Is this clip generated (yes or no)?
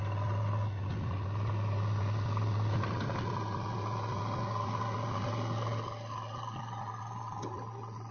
no